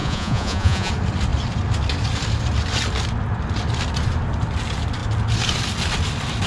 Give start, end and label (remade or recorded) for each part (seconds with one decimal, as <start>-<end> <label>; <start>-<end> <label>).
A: 0.0-0.9 remade; 0.9-6.5 recorded